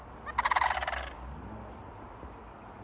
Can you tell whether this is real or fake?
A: real